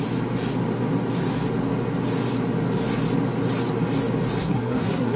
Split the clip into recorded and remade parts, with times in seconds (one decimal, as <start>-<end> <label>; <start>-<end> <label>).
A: 0.0-4.4 recorded; 4.4-5.2 remade